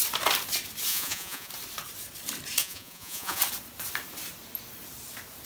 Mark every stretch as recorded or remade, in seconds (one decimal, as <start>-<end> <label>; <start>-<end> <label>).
0.0-0.9 recorded; 0.9-1.5 remade; 1.5-2.6 recorded; 2.6-3.4 remade; 3.4-5.5 recorded